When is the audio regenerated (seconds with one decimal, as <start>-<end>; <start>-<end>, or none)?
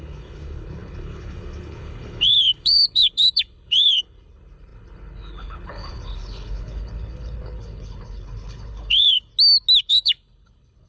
0.0-9.3; 9.9-10.9